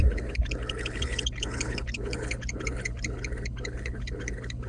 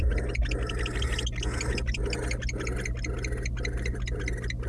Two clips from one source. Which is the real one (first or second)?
second